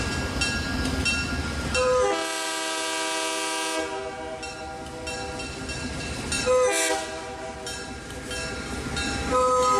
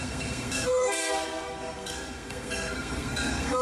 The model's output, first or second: second